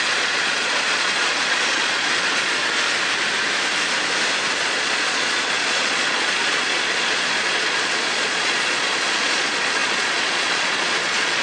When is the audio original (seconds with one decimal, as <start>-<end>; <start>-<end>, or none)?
2.6-4.6